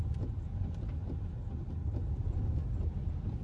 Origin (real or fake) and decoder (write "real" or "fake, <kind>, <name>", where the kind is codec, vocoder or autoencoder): real